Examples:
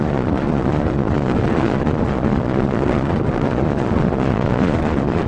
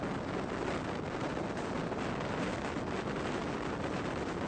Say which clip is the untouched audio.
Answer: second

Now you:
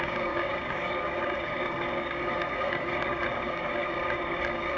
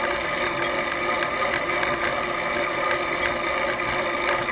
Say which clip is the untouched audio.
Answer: second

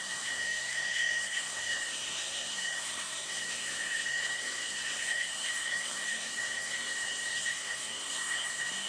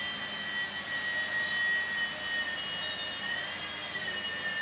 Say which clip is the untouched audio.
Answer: second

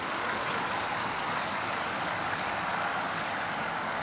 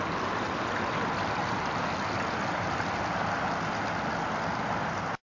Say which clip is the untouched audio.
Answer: second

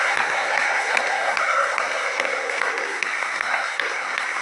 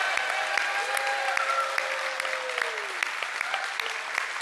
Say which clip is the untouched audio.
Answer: second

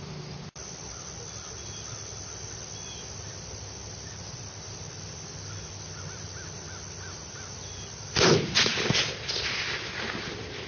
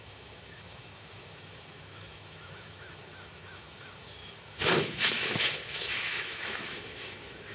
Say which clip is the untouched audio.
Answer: first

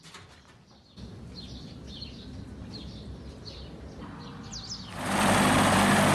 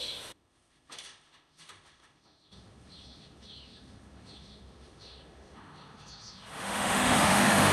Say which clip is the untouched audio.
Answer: first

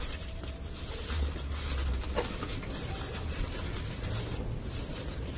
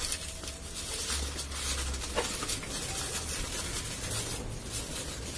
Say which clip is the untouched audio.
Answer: second